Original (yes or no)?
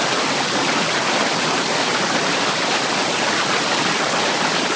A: yes